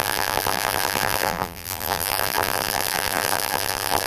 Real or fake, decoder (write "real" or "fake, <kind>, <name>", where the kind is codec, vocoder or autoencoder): fake, vocoder, BigVGAN v2